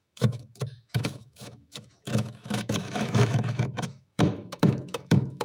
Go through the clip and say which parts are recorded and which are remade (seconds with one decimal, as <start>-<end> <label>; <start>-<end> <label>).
0.0-5.4 remade